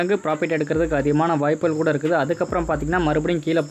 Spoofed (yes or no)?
no